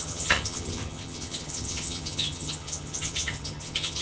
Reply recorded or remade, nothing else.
remade